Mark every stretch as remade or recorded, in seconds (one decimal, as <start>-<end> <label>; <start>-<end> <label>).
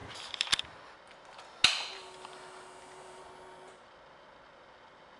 0.0-5.2 recorded